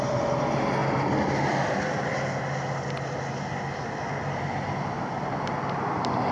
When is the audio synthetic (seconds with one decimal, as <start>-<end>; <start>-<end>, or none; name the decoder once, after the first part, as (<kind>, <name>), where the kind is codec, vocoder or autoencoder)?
none